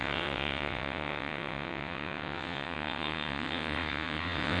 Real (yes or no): no